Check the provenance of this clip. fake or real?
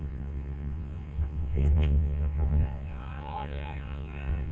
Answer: fake